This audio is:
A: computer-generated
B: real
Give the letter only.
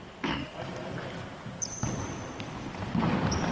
B